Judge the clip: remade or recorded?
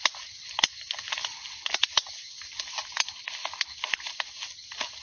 recorded